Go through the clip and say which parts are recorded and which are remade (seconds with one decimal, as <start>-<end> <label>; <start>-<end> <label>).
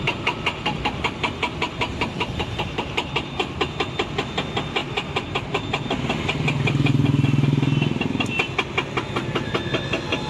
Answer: 0.0-1.9 recorded; 1.9-3.1 remade; 3.1-4.8 recorded; 4.8-5.9 remade; 5.9-10.3 recorded